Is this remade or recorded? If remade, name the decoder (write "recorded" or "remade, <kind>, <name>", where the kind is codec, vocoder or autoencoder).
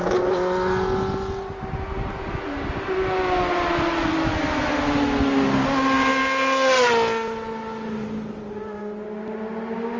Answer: recorded